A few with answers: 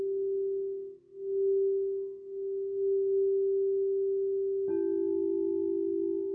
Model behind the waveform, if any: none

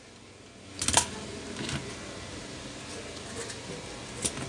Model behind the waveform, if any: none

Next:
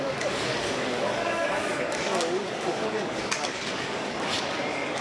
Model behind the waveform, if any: codec, DAC